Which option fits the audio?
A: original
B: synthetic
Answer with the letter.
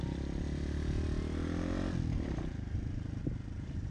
A